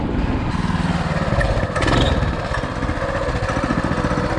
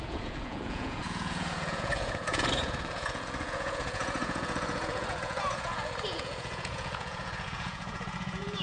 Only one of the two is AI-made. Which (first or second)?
second